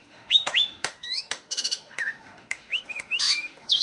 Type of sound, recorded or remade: remade